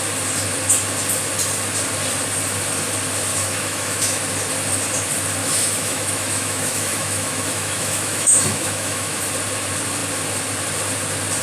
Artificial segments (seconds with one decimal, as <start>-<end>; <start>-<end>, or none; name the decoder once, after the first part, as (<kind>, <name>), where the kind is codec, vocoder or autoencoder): 3.3-4.2 (autoencoder, DAC-VAE); 5.4-9.2